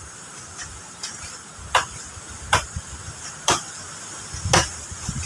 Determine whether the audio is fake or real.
real